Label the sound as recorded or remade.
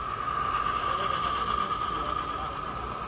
recorded